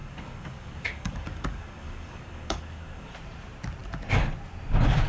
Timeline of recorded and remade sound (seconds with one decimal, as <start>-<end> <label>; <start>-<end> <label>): 0.0-3.1 remade; 3.1-5.1 recorded